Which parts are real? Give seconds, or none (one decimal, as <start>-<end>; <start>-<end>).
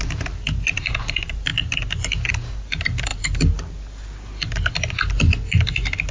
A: 1.5-2.3; 3.1-6.1